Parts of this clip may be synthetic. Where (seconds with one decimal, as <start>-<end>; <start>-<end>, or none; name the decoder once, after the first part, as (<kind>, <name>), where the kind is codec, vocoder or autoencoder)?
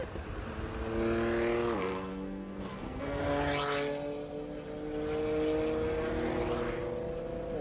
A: 1.8-3.2 (codec, SNAC)